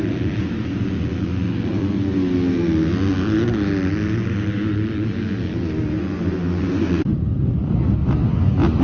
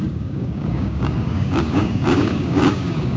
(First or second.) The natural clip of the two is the first